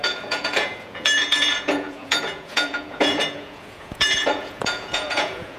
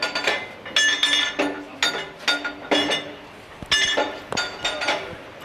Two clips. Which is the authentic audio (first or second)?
second